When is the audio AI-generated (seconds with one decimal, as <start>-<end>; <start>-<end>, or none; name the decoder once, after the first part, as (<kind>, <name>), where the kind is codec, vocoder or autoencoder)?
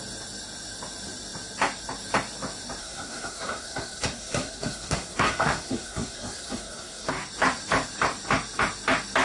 2.8-7.1 (codec, SNAC)